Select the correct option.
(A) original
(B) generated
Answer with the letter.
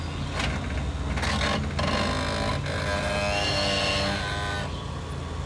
A